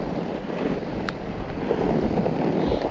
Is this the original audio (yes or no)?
yes